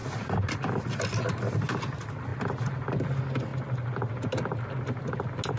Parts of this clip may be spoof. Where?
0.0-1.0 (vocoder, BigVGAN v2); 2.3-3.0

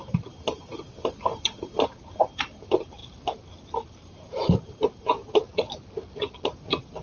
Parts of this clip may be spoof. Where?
0.0-5.5 (vocoder, BigVGAN v2); 6.5-7.0

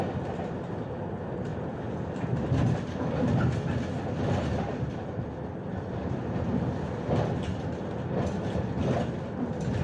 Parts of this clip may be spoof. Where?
none

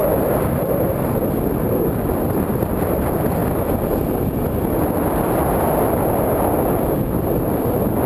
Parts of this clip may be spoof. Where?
none